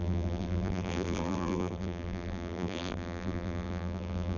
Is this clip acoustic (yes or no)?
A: no